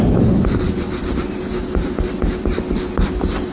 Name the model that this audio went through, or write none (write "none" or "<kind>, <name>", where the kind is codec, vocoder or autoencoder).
none